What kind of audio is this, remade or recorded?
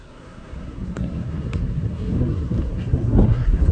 remade